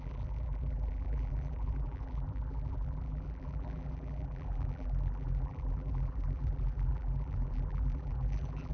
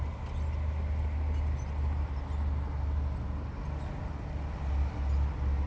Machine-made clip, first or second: first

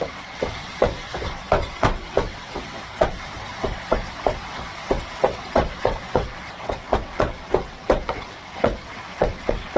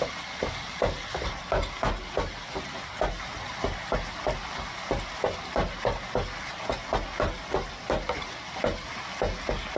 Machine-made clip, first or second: first